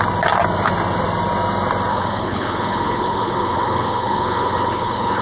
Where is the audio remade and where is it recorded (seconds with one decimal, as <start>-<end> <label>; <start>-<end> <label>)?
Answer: 0.0-1.9 recorded; 1.9-5.2 remade